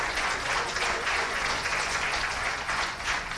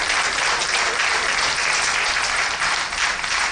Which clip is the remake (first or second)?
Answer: first